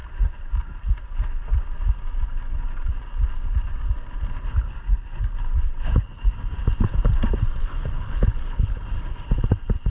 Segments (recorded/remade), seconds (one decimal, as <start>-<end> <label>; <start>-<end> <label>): 0.0-7.6 recorded; 7.6-8.8 remade; 8.8-9.9 recorded